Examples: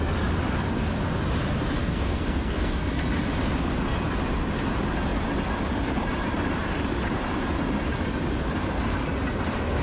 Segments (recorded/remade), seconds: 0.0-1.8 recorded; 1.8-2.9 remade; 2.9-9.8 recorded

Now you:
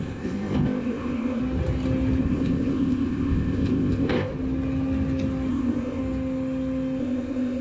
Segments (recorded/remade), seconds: 0.0-1.4 remade; 1.4-2.2 recorded; 2.2-4.3 remade; 4.3-5.5 recorded; 5.5-6.0 remade; 6.0-7.0 recorded; 7.0-7.6 remade

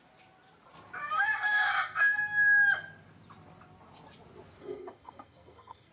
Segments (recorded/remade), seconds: 0.0-1.0 recorded; 1.0-2.2 remade; 2.2-4.6 recorded; 4.6-5.9 remade

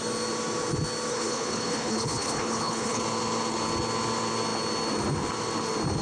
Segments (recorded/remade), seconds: 0.0-1.1 recorded; 1.1-3.0 remade; 3.0-6.0 recorded

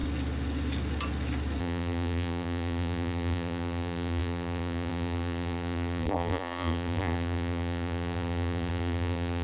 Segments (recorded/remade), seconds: 0.0-1.6 recorded; 1.6-9.4 remade

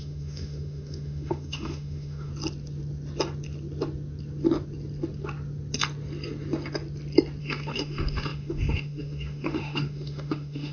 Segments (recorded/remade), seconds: 0.0-2.3 remade; 2.3-7.4 recorded; 7.4-10.7 remade

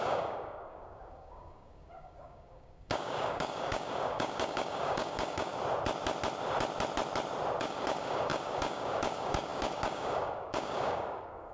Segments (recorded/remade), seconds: 0.0-5.5 remade; 5.5-7.6 recorded; 7.6-11.5 remade